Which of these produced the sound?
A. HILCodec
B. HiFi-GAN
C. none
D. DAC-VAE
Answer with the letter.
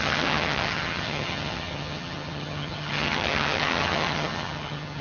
B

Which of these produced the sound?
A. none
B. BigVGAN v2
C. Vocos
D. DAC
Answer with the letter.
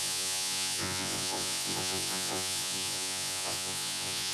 C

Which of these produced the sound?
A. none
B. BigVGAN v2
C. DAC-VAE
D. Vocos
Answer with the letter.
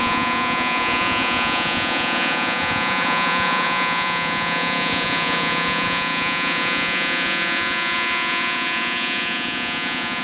D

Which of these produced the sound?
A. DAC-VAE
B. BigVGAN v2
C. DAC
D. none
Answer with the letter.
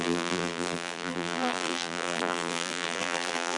B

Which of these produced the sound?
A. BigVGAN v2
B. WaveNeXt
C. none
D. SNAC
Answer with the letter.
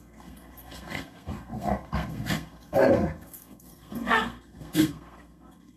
D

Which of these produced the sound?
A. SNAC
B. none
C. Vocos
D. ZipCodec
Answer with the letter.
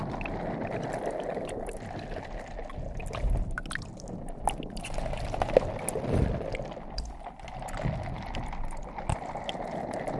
B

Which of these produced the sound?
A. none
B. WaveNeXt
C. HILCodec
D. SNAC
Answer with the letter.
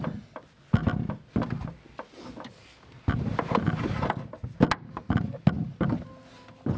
A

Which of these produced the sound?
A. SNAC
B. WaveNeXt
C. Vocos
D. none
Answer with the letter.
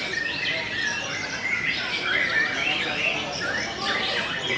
D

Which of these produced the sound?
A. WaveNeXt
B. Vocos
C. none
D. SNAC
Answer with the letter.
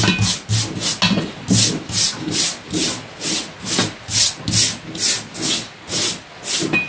C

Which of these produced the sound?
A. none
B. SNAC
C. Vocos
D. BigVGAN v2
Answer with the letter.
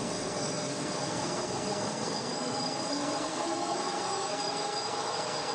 B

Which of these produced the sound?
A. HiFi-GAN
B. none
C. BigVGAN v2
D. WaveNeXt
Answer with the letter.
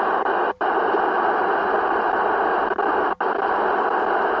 B